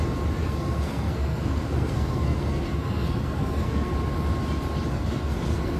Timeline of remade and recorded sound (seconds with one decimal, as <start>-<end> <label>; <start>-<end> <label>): 0.0-0.4 recorded; 0.4-3.9 remade; 3.9-4.9 recorded; 4.9-5.8 remade